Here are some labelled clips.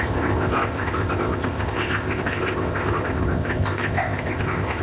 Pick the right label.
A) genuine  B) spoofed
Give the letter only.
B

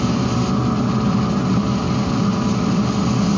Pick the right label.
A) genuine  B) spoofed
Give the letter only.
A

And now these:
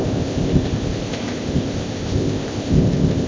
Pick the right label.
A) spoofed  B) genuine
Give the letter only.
A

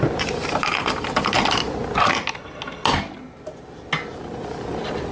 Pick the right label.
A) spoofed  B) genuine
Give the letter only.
B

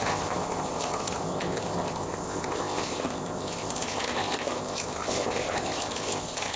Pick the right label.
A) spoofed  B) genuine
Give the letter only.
A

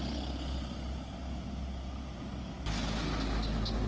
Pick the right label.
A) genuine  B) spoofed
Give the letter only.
A